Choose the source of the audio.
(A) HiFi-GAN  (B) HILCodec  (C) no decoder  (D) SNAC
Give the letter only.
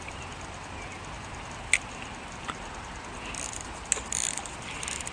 C